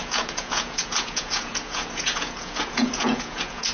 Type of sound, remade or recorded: remade